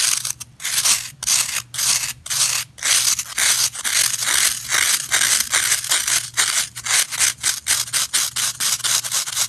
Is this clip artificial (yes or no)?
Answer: no